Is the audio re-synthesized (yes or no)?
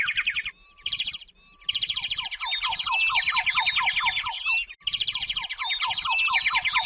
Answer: no